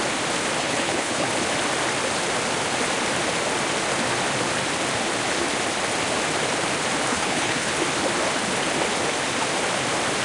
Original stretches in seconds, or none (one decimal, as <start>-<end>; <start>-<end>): 0.0-0.6; 1.3-7.1; 7.7-10.2